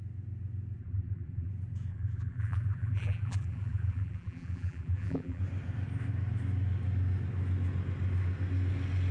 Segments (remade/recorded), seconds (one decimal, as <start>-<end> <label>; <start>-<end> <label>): 0.0-0.8 recorded; 0.8-1.5 remade; 1.5-1.9 recorded; 1.9-5.4 remade; 5.4-9.1 recorded